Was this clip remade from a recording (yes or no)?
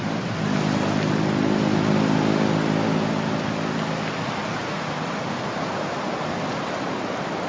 no